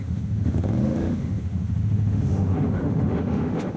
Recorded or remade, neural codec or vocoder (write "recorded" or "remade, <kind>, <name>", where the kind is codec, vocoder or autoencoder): remade, autoencoder, DAC-VAE